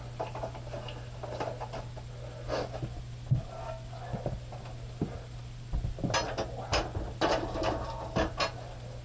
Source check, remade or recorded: recorded